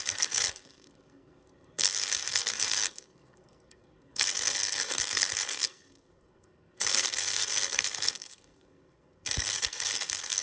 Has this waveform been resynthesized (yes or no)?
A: yes